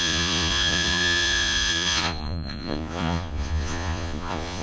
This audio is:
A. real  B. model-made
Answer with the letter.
B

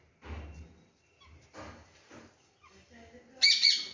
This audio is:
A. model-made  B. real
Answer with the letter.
B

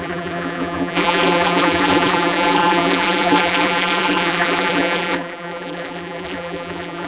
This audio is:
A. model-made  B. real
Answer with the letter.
A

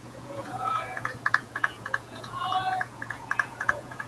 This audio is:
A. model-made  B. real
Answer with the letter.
A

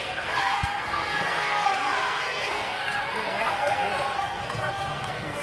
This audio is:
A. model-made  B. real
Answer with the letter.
A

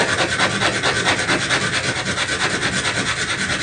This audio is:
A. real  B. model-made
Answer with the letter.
A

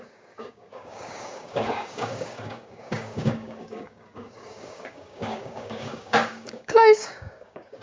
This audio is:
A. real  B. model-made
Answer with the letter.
B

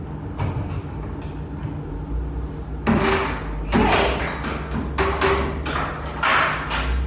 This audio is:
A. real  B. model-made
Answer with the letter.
A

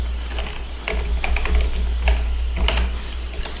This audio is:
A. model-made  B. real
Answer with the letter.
B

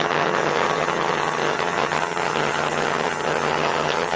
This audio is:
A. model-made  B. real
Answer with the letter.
A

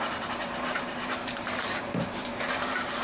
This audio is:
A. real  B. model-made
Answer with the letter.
B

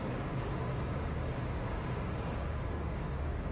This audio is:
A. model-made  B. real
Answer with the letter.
A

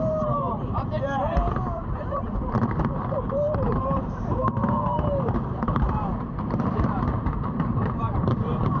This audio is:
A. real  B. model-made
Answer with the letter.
B